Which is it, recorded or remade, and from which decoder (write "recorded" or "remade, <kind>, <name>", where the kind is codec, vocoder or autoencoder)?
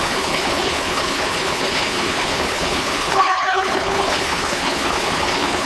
remade, codec, HILCodec